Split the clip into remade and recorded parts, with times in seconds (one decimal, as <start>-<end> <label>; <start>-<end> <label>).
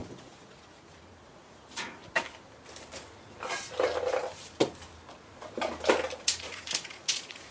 0.0-2.0 remade; 2.0-6.2 recorded; 6.2-7.5 remade